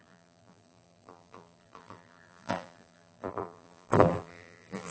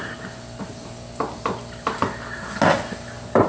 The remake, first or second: first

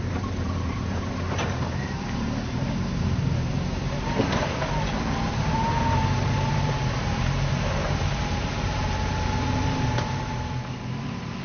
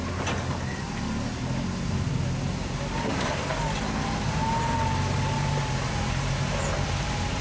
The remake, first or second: first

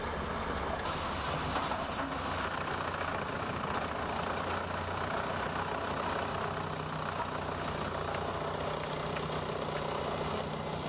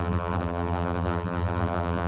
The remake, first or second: second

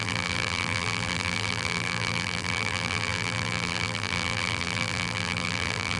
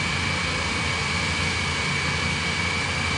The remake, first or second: first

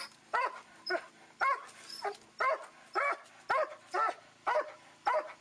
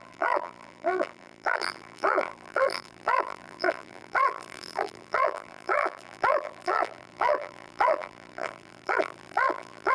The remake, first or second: second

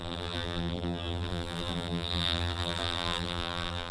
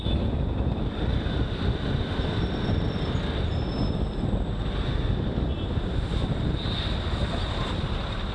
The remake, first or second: first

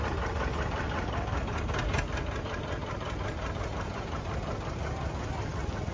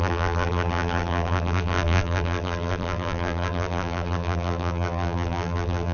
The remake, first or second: second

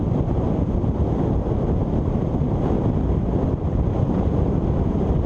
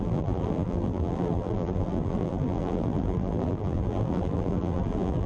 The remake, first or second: second